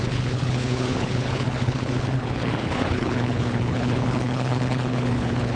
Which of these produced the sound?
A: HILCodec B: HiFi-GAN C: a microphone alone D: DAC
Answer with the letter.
A